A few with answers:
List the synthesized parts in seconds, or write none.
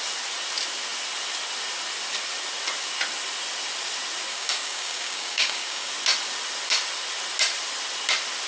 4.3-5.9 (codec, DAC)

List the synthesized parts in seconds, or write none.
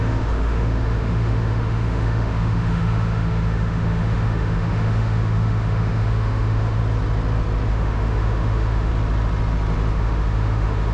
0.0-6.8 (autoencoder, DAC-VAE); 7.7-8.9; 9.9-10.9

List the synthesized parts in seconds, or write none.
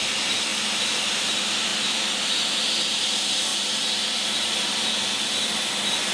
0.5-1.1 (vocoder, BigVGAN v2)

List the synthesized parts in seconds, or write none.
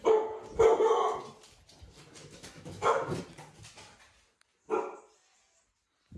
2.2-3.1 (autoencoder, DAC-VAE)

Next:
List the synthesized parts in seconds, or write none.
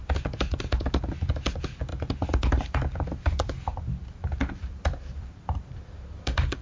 none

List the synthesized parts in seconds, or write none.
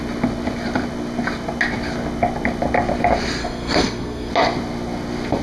3.4-4.3 (codec, SNAC)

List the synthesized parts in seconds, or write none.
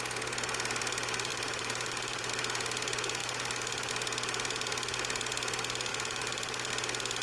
1.3-2.3 (vocoder, BigVGAN v2); 3.2-3.9; 5.9-6.7